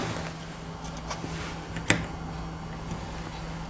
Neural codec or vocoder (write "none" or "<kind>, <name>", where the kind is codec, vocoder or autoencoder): none